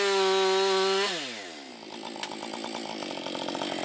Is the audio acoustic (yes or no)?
yes